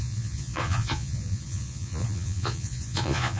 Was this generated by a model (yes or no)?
yes